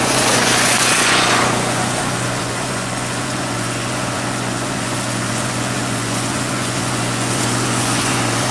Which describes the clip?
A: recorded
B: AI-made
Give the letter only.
B